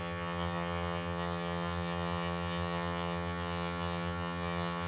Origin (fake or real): fake